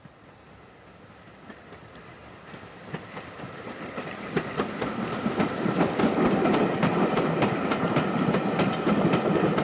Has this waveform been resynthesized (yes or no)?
yes